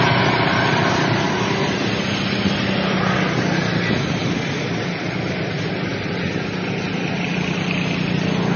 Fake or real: real